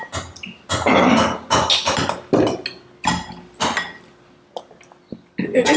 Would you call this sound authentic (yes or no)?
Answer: yes